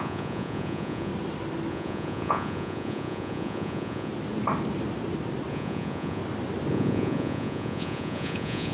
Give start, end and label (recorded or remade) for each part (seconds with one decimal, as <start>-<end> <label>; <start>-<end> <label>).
0.0-1.1 remade; 1.1-1.7 recorded; 1.7-4.1 remade; 4.1-5.5 recorded; 5.5-6.2 remade; 6.2-6.7 recorded; 6.7-8.7 remade